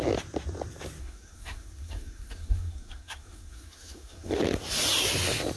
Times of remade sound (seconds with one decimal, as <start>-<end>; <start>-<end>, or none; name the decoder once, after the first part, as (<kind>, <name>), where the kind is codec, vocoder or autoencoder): 1.0-4.4 (codec, SNAC)